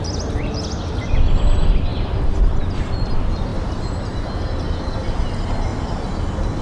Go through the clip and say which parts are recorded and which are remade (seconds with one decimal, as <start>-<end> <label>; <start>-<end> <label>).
0.0-6.6 recorded